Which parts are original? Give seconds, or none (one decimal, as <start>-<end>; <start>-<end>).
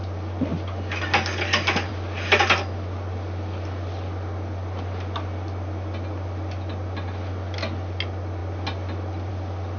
0.0-9.8